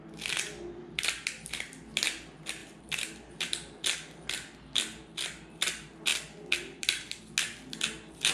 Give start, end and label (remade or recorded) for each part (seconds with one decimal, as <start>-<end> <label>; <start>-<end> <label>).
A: 0.0-2.6 recorded; 2.6-3.8 remade; 3.8-6.1 recorded; 6.1-7.2 remade; 7.2-8.3 recorded